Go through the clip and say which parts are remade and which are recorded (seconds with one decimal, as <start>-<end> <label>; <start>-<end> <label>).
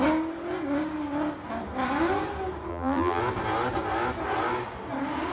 0.0-2.7 recorded; 2.7-3.2 remade; 3.2-5.3 recorded